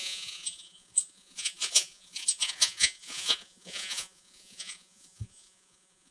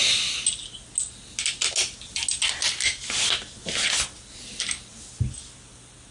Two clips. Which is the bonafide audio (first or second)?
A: second